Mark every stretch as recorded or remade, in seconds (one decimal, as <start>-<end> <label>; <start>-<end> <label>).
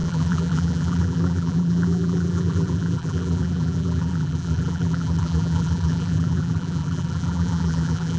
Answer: 0.0-8.2 remade